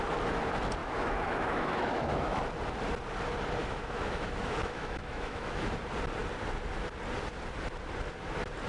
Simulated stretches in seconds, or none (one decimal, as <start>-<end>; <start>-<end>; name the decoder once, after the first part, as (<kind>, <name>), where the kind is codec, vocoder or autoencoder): 0.8-2.4 (autoencoder, DAC-VAE); 3.6-5.7